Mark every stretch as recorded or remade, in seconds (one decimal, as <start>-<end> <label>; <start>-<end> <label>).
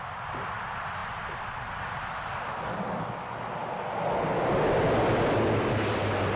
0.0-1.0 recorded; 1.0-1.6 remade; 1.6-6.4 recorded